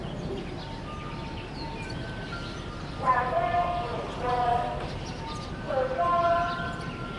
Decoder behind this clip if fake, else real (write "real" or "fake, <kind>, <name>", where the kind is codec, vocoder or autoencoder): real